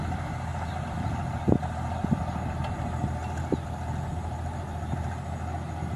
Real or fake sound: real